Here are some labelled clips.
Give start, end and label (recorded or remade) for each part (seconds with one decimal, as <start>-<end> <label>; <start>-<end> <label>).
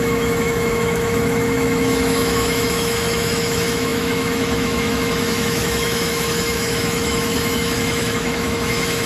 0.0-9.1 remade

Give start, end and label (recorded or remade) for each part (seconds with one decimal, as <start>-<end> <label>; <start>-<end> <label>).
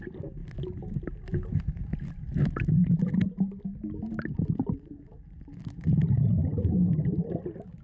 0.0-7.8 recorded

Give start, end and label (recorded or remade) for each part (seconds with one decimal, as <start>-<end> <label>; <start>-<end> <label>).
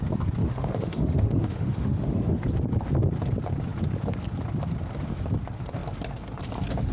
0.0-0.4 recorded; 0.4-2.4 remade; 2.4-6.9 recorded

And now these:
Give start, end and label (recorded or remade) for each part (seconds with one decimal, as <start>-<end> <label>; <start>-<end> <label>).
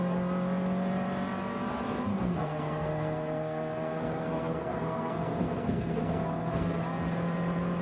0.0-2.1 recorded; 2.1-6.8 remade; 6.8-7.8 recorded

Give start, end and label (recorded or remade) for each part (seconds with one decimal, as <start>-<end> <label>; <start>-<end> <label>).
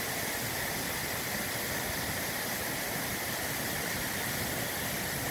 0.0-5.3 recorded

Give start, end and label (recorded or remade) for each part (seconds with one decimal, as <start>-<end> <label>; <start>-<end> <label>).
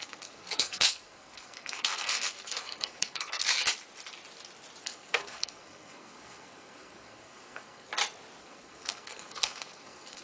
0.0-3.5 remade; 3.5-4.8 recorded; 4.8-7.9 remade; 7.9-8.4 recorded; 8.4-10.2 remade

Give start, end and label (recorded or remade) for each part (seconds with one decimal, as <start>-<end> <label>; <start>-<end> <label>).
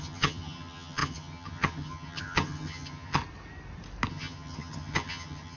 0.0-3.2 remade; 3.2-4.1 recorded; 4.1-5.6 remade